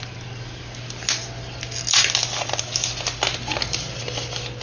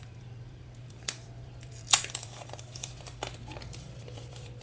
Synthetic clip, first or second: second